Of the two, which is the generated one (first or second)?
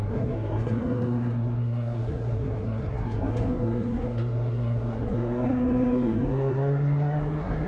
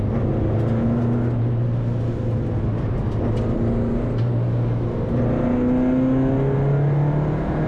first